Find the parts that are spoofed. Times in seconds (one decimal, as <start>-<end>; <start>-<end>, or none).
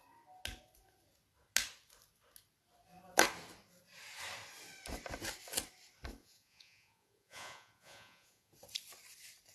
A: 6.2-8.5